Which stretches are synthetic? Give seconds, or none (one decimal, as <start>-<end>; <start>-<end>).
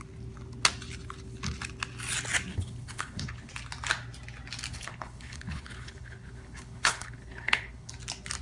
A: 2.5-3.5; 4.7-7.9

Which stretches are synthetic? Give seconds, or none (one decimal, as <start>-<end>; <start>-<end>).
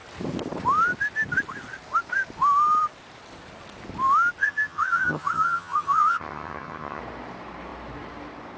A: 4.4-7.0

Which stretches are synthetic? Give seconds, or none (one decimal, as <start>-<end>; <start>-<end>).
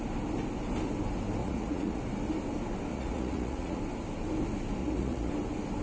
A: 1.4-2.0; 2.9-3.8; 4.8-5.3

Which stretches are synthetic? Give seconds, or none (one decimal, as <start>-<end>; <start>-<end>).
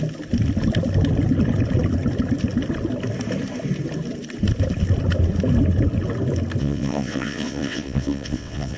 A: 6.6-8.8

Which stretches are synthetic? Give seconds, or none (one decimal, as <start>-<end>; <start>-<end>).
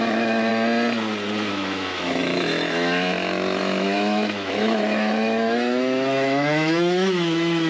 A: 0.0-0.5; 1.5-7.7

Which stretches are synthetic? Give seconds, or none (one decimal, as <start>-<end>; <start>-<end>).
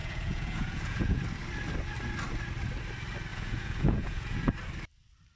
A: 0.0-1.2; 3.3-4.5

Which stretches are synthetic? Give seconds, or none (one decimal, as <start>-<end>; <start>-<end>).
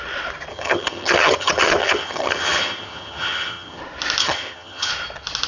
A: 0.5-3.8; 4.2-4.9